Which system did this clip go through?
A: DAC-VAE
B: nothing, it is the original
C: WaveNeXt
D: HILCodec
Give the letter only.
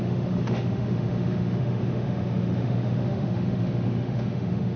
A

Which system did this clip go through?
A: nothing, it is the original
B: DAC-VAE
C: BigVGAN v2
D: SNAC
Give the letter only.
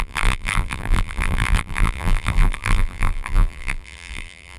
C